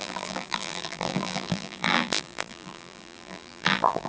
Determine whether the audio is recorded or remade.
remade